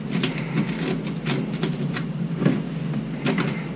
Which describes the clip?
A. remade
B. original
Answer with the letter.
B